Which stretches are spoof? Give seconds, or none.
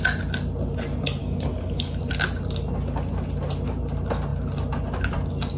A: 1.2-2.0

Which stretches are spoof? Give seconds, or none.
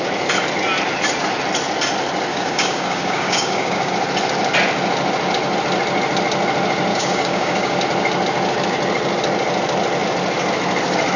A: 2.3-3.9; 6.9-7.8